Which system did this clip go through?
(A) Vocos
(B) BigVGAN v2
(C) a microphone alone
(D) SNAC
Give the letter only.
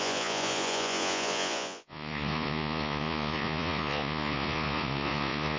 A